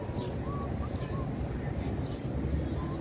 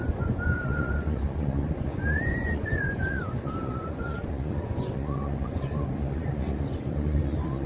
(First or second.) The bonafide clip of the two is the first